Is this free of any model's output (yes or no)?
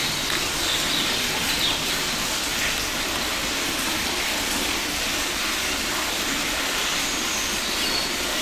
yes